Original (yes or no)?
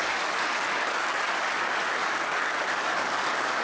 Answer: no